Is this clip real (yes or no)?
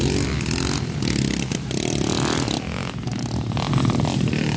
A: yes